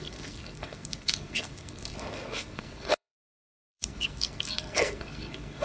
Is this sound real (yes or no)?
no